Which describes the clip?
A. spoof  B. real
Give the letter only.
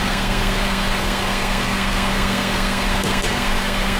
A